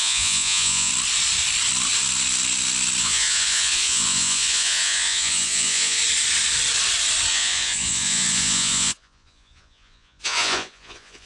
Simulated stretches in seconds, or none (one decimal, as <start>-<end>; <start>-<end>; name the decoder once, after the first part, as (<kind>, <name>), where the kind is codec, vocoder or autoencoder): 0.0-0.9 (vocoder, Vocos); 3.0-6.0; 7.3-11.3